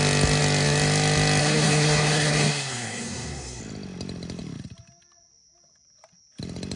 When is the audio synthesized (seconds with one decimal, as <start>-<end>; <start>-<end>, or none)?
1.4-3.6